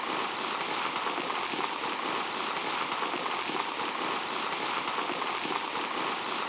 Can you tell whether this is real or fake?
real